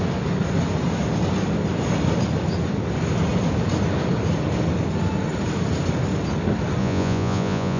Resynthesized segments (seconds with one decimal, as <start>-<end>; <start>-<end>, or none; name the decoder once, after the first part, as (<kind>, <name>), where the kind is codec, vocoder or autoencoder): 6.8-7.8 (vocoder, Vocos)